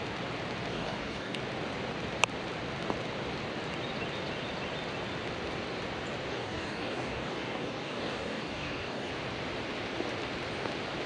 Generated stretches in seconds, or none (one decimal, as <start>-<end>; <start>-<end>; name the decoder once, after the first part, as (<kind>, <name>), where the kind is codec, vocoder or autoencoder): 0.7-1.4 (codec, DAC); 6.3-9.1